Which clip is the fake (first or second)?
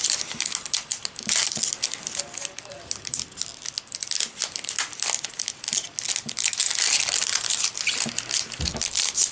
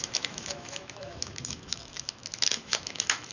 second